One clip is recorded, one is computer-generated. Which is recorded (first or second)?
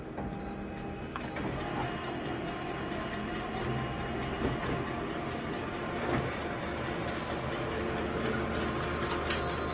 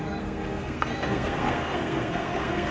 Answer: first